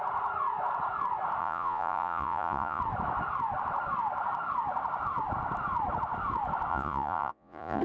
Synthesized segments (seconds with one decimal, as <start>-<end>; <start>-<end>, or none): 1.4-2.8; 6.7-7.8